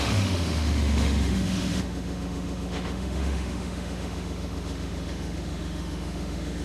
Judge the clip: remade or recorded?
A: remade